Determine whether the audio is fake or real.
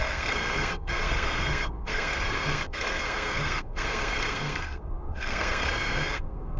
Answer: fake